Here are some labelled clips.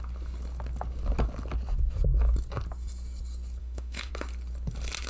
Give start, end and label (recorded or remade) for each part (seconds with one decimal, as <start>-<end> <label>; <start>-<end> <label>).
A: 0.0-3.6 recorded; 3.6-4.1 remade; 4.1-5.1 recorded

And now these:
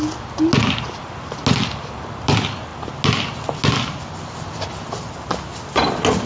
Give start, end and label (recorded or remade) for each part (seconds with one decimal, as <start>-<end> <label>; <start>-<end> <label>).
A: 0.0-6.3 recorded

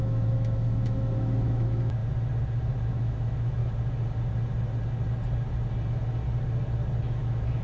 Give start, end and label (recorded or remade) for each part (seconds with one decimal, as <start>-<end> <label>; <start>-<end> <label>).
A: 0.0-2.0 remade; 2.0-2.6 recorded; 2.6-3.6 remade; 3.6-7.0 recorded; 7.0-7.6 remade

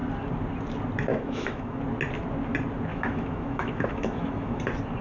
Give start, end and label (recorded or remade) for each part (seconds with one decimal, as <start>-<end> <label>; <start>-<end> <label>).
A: 0.0-1.1 recorded; 1.1-1.8 remade; 1.8-2.9 recorded; 2.9-4.6 remade; 4.6-5.0 recorded

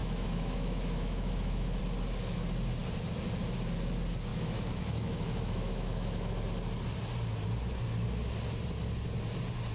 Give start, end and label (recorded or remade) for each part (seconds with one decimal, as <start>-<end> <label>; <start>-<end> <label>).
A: 0.0-1.8 remade; 1.8-4.3 recorded; 4.3-6.3 remade; 6.3-9.7 recorded

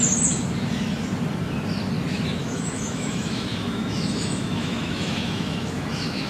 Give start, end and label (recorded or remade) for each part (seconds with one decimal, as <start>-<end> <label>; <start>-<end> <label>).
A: 0.0-2.4 recorded; 2.4-6.3 remade

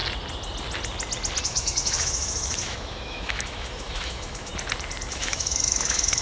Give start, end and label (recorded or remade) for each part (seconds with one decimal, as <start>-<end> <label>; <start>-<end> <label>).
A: 0.0-1.4 recorded; 1.4-4.5 remade; 4.5-5.1 recorded; 5.1-6.2 remade